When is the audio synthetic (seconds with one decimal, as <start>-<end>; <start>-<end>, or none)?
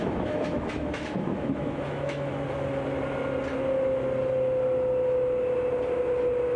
0.0-2.3